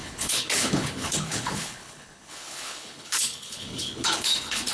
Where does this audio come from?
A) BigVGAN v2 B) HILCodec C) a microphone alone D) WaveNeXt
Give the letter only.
B